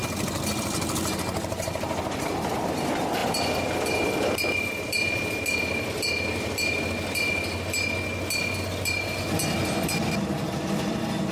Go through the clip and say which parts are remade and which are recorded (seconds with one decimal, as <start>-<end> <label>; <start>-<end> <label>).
0.0-3.2 recorded; 3.2-3.8 remade; 3.8-11.3 recorded